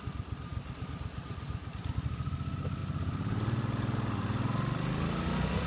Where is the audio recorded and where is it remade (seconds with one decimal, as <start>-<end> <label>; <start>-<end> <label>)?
0.0-2.8 recorded; 2.8-3.6 remade; 3.6-5.7 recorded